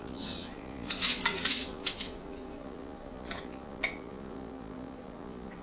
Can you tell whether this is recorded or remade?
remade